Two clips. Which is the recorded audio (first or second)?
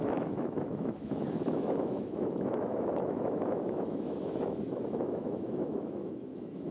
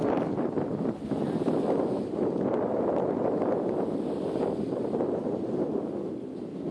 second